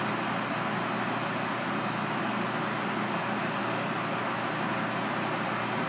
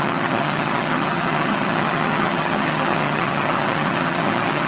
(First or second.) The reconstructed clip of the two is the second